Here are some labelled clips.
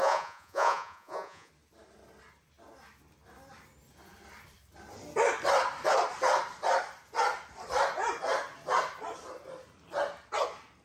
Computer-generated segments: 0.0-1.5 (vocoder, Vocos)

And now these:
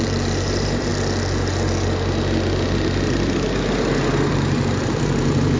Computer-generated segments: 0.0-0.9 (vocoder, BigVGAN v2); 4.3-5.6